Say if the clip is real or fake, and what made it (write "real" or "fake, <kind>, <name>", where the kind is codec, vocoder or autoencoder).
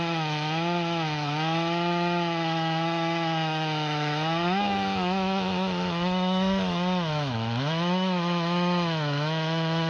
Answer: fake, autoencoder, DAC-VAE